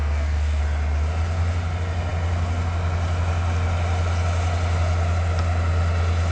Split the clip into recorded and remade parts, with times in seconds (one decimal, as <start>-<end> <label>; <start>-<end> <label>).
0.0-0.6 remade; 0.6-6.3 recorded